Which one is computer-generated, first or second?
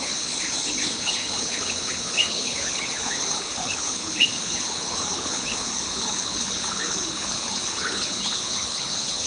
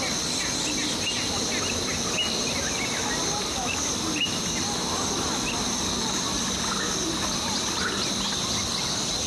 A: first